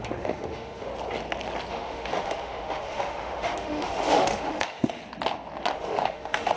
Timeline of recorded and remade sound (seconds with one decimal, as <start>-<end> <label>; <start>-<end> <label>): 0.0-0.9 remade; 0.9-1.7 recorded; 1.7-5.0 remade; 5.0-5.7 recorded; 5.7-6.6 remade